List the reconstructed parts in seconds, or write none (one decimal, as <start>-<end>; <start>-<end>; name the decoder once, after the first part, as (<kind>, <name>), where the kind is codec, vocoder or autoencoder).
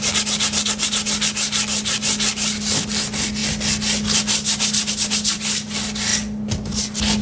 none